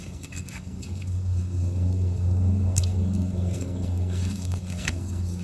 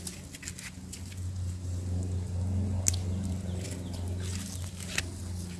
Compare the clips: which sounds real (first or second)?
second